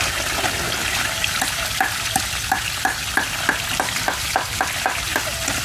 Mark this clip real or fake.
real